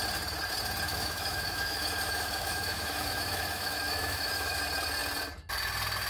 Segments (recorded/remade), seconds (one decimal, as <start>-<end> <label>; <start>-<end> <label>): 0.0-0.9 recorded; 0.9-4.6 remade; 4.6-6.1 recorded